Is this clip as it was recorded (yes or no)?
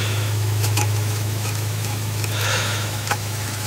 no